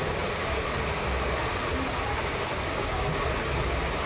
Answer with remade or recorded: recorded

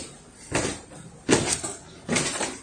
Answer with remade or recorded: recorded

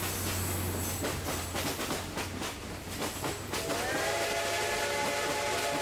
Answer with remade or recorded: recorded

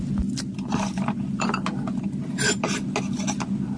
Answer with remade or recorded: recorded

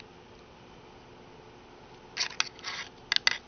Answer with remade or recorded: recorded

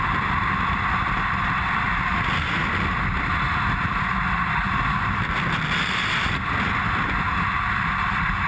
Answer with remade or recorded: recorded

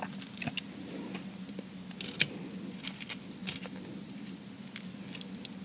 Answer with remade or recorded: recorded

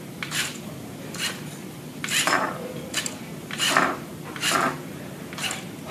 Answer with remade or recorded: remade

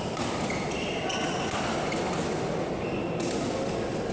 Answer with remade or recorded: recorded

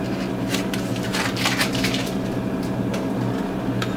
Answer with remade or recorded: recorded